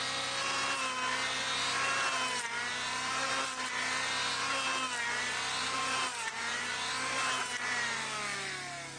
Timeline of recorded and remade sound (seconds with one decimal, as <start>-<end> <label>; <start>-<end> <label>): 0.0-5.6 recorded; 5.6-6.9 remade; 6.9-9.0 recorded